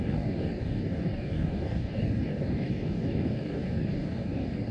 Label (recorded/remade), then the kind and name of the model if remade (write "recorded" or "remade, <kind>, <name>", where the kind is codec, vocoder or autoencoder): remade, codec, DAC